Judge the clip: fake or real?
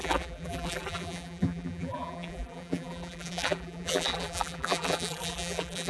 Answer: fake